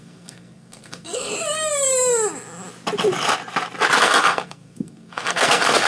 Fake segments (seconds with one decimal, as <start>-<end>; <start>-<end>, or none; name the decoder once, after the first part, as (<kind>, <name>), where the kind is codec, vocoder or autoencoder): 0.0-1.3 (codec, SNAC); 4.0-5.9